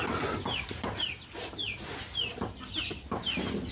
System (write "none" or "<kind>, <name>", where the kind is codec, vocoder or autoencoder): none